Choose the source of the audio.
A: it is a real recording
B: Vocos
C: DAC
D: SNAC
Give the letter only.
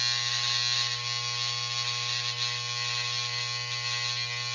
A